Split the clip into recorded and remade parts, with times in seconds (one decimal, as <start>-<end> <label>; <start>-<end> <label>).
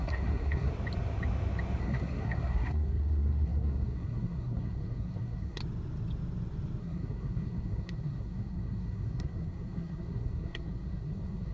0.0-0.7 remade; 0.7-1.8 recorded; 1.8-5.6 remade; 5.6-6.8 recorded; 6.8-11.5 remade